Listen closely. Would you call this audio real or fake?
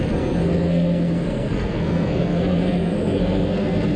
fake